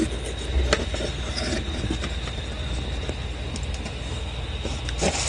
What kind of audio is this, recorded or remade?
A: recorded